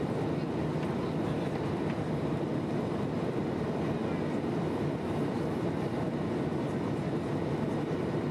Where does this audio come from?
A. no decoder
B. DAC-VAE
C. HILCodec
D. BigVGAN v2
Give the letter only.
A